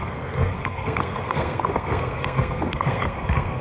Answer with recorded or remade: remade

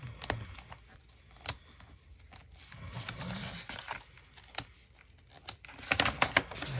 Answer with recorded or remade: recorded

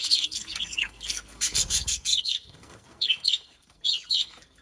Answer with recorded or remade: remade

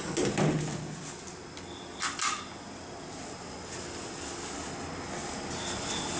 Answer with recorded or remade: recorded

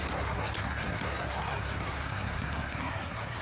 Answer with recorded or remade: remade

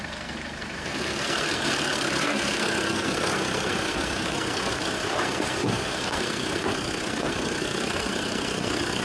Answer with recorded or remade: remade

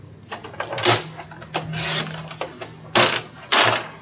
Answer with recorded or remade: recorded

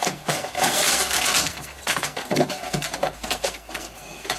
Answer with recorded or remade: remade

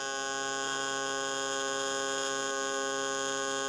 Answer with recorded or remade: recorded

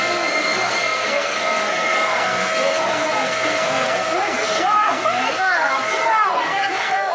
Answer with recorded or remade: remade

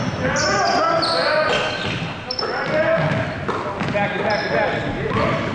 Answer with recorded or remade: recorded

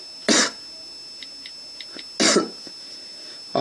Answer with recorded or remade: recorded